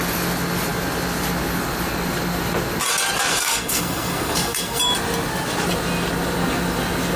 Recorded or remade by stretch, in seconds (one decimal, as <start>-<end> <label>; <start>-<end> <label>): 0.0-3.3 recorded; 3.3-4.8 remade; 4.8-7.2 recorded